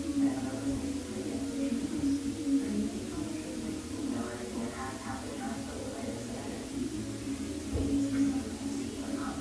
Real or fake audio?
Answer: real